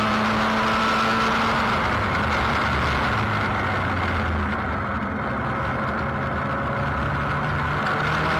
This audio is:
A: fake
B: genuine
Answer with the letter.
B